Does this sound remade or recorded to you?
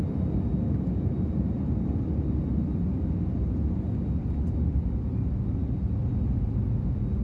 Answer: recorded